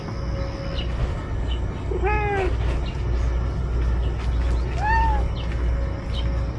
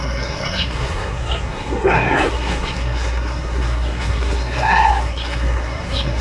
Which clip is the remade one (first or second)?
second